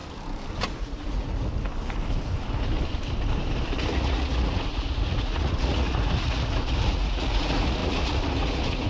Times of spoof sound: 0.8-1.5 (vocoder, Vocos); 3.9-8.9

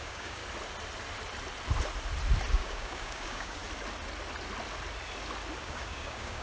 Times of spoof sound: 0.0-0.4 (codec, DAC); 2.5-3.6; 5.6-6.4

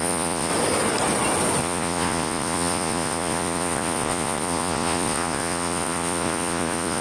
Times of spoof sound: 0.0-0.5 (vocoder, Vocos); 1.6-7.0

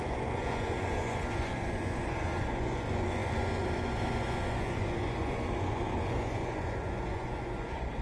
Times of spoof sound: 0.0-8.0 (vocoder, Vocos)

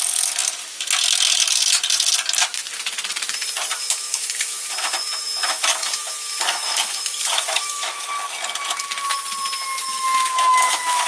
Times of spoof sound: 3.7-8.1 (autoencoder, DAC-VAE); 9.8-11.1

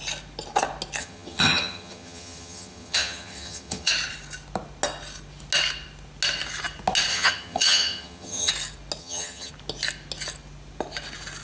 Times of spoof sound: 1.0-3.9 (vocoder, HiFi-GAN); 7.1-8.5; 9.0-9.5